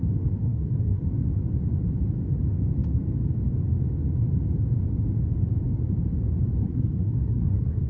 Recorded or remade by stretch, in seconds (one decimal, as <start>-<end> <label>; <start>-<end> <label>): 0.0-0.4 recorded; 0.4-1.0 remade; 1.0-6.6 recorded; 6.6-7.9 remade